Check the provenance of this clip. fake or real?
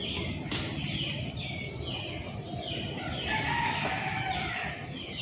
real